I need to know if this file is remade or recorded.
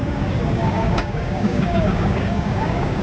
remade